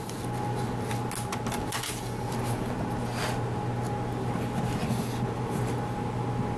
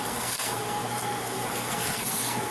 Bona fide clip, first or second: first